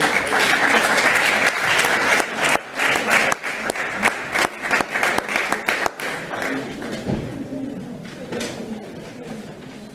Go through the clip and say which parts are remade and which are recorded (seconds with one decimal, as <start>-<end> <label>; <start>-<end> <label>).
0.0-9.9 recorded

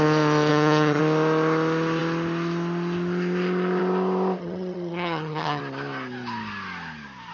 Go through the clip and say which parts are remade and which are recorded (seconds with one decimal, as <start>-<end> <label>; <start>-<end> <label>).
0.0-0.5 recorded; 0.5-1.0 remade; 1.0-4.4 recorded; 4.4-5.6 remade; 5.6-7.3 recorded

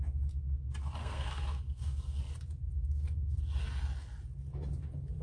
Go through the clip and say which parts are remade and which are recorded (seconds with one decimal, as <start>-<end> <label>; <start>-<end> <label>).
0.0-1.0 recorded; 1.0-2.2 remade; 2.2-2.8 recorded; 2.8-3.4 remade; 3.4-5.2 recorded